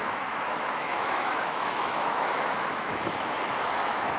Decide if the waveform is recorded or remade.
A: remade